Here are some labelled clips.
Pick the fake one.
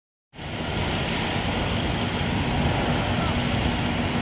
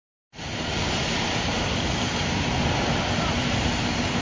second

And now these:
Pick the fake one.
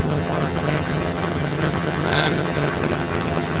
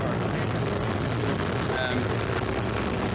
first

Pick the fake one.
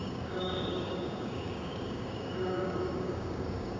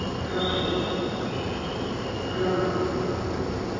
first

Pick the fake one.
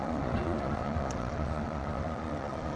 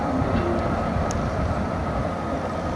first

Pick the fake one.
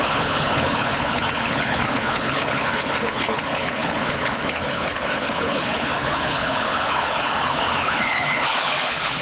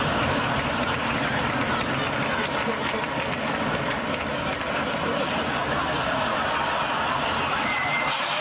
first